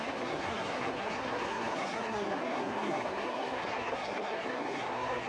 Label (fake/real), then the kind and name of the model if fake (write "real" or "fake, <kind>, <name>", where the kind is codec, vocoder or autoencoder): fake, codec, SNAC